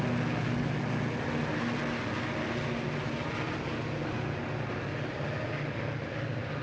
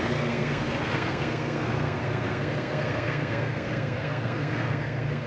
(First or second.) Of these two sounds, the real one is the first